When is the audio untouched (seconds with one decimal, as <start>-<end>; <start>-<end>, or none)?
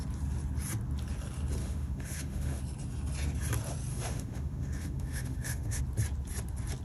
0.0-1.6; 2.6-3.9; 5.8-6.8